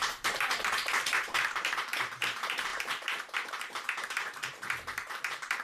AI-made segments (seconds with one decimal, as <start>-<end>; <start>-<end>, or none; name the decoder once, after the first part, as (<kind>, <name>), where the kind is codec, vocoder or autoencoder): 0.0-5.6 (vocoder, BigVGAN v2)

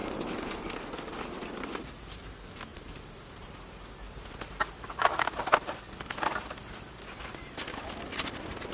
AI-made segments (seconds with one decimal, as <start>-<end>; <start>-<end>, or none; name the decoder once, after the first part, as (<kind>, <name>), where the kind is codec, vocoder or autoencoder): 0.0-0.7 (vocoder, BigVGAN v2); 2.7-3.5

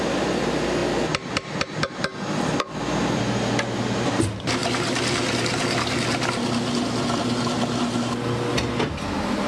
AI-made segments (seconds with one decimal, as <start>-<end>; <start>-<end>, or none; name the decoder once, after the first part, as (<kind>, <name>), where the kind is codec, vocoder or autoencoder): none

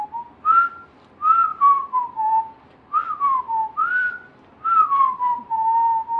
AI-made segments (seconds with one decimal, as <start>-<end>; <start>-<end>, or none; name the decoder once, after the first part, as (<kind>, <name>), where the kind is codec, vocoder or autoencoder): 1.5-3.4 (vocoder, BigVGAN v2); 3.8-4.3

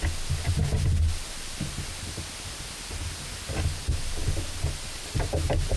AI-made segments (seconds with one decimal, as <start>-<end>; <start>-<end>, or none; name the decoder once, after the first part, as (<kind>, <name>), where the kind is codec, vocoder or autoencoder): none

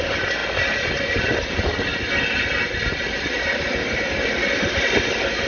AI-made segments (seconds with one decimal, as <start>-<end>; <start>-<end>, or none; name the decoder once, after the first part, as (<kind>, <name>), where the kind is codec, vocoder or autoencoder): none

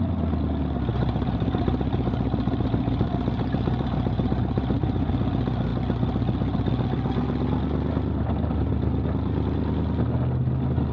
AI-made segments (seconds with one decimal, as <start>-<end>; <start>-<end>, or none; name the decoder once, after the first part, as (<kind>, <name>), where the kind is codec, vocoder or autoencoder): 0.9-5.1 (vocoder, BigVGAN v2)

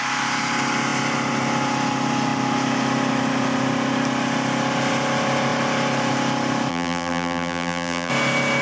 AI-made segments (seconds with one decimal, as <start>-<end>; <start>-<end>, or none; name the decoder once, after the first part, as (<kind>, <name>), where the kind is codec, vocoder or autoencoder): 6.7-8.1 (vocoder, BigVGAN v2)